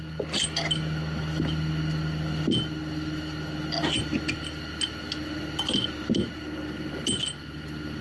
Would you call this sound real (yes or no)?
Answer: yes